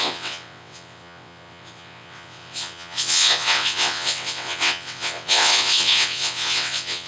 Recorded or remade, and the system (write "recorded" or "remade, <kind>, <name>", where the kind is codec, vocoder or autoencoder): remade, vocoder, WaveNeXt